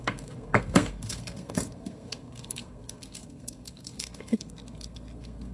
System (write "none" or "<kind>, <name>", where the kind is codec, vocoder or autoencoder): codec, SNAC